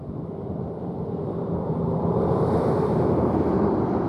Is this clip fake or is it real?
fake